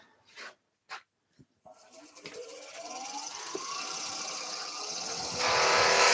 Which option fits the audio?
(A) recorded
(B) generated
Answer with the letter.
A